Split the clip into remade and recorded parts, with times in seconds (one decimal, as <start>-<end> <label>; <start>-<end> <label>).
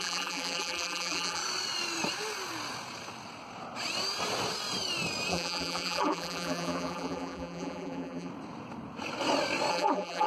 0.0-1.4 remade; 1.4-5.3 recorded; 5.3-8.3 remade; 8.3-9.7 recorded; 9.7-10.3 remade